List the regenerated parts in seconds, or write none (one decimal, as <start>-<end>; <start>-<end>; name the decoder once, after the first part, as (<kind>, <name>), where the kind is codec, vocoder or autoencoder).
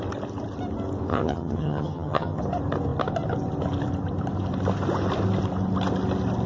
1.1-2.4 (vocoder, HiFi-GAN)